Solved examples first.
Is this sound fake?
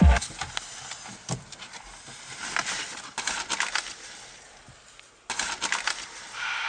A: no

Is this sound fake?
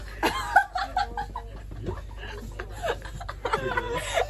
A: no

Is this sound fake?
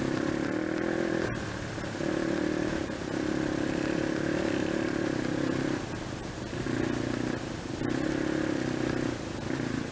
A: no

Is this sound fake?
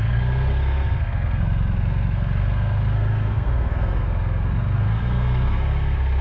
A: yes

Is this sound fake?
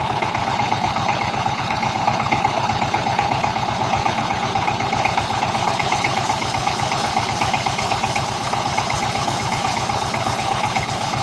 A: yes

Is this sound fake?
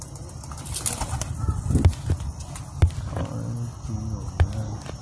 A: no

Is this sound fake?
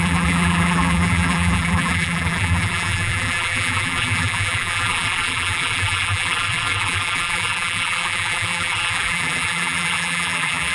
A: yes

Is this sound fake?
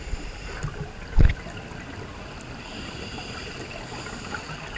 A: no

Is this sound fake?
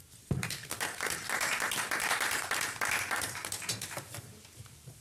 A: yes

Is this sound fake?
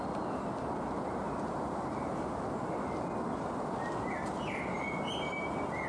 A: no